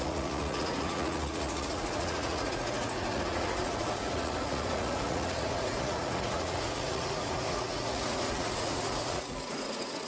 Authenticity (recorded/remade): remade